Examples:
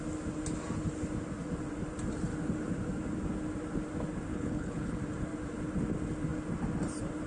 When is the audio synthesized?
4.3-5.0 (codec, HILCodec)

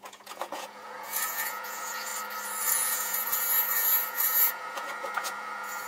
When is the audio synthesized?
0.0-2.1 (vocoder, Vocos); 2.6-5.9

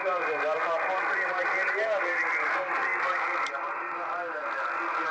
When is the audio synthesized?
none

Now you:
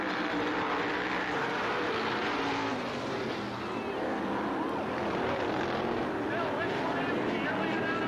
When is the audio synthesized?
none